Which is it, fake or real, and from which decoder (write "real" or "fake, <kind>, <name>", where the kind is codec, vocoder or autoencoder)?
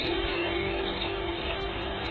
fake, codec, DAC